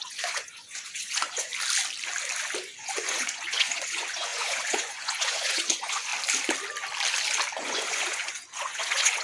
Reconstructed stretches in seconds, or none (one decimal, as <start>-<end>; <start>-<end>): 0.0-1.5; 2.6-6.1; 7.6-9.2